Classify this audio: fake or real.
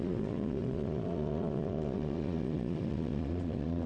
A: fake